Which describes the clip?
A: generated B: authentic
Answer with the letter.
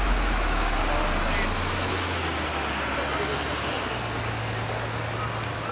B